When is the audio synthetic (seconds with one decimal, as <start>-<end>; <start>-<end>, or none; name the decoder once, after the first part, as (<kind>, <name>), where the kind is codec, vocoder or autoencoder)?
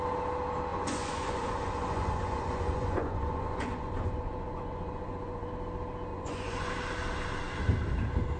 0.7-5.5 (vocoder, Vocos); 6.1-6.7